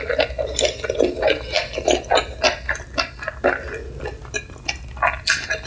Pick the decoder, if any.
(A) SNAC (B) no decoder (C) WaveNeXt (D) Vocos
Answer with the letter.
B